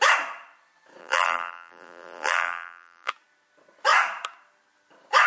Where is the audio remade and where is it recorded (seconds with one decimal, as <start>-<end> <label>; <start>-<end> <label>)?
0.0-1.0 recorded; 1.0-3.1 remade; 3.1-5.3 recorded